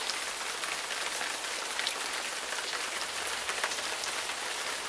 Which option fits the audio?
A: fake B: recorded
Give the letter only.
B